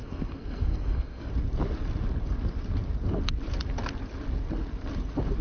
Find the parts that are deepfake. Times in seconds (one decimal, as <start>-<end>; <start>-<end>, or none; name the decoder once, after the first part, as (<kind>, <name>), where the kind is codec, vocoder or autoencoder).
0.0-1.3 (codec, SNAC)